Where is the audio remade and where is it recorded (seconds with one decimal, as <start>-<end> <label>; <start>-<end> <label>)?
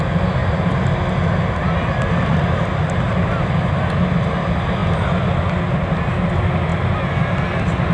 0.0-7.9 recorded